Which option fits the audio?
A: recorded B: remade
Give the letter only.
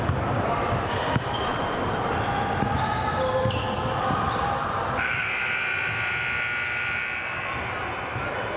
A